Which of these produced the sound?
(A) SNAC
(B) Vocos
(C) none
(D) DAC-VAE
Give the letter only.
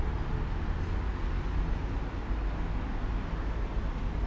C